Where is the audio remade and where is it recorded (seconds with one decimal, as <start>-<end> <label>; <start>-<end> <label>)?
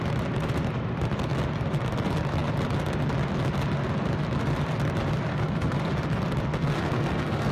0.0-5.3 recorded; 5.3-5.8 remade; 5.8-6.5 recorded; 6.5-7.5 remade